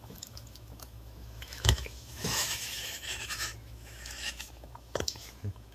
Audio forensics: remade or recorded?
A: remade